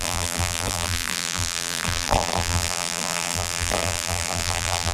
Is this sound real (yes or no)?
no